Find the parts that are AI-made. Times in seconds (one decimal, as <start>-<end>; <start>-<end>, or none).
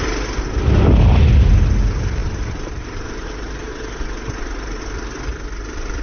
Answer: 2.2-4.8